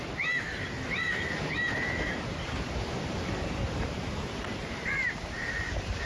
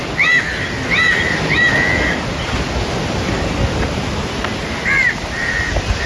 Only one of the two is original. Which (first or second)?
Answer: second